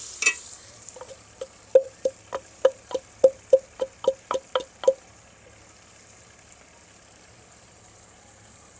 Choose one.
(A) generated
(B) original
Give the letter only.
B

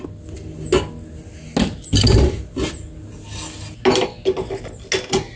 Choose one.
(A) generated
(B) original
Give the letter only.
B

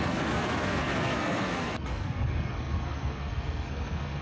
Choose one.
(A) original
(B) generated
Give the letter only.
B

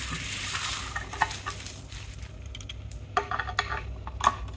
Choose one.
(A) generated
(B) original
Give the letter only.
B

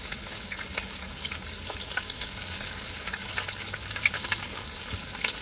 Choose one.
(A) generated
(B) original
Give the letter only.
A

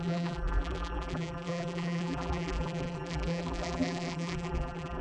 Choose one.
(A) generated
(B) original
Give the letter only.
A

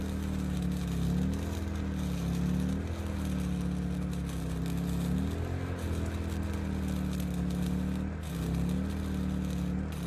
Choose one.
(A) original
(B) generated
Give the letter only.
A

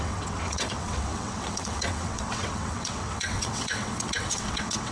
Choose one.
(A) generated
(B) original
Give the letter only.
A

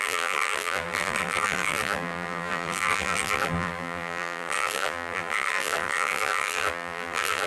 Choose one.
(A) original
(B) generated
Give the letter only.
B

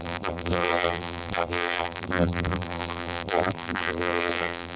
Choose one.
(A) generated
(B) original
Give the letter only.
A